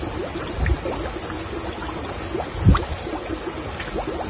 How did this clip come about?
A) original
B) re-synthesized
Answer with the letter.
A